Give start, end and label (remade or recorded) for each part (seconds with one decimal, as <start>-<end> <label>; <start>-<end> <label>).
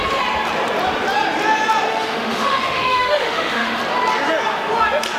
0.0-1.9 recorded; 1.9-3.8 remade; 3.8-5.2 recorded